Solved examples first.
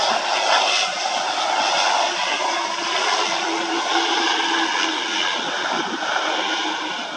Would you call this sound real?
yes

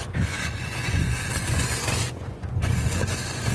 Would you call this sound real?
no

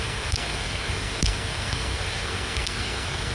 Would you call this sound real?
no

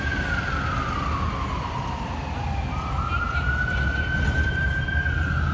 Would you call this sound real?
yes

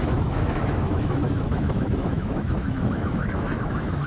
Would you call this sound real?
no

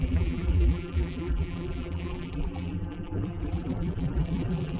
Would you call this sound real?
no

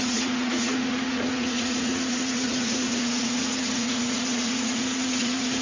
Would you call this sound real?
no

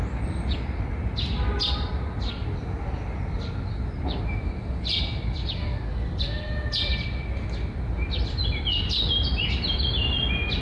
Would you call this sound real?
yes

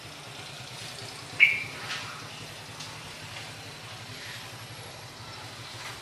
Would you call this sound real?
yes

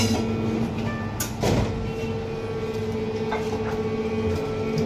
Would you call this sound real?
yes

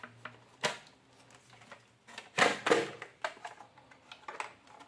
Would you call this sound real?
yes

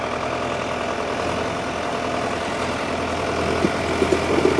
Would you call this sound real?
yes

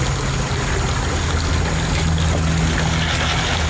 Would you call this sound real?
yes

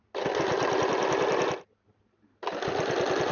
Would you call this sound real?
yes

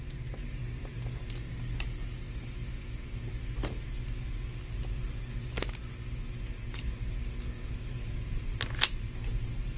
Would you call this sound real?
yes